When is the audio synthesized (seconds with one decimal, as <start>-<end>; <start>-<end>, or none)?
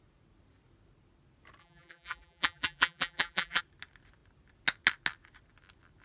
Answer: 1.6-3.6